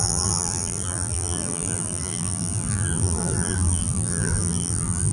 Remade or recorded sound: remade